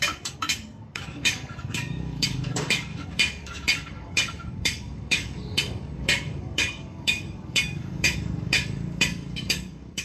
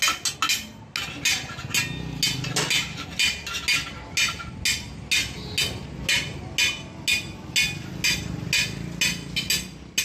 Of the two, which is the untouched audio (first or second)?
second